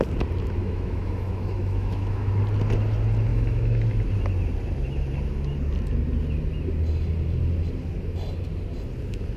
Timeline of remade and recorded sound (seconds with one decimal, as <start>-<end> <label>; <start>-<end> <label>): 0.0-0.6 recorded; 0.6-2.3 remade; 2.3-3.3 recorded; 3.3-3.8 remade; 3.8-9.4 recorded